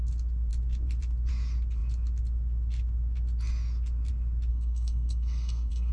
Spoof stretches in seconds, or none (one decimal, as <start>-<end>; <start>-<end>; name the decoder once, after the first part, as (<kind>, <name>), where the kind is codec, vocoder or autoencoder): 4.5-5.9 (codec, SNAC)